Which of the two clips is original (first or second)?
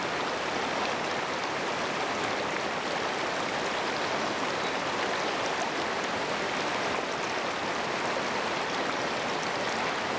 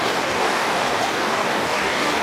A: first